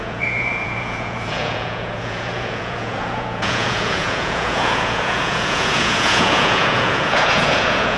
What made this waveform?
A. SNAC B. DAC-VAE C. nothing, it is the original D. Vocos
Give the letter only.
D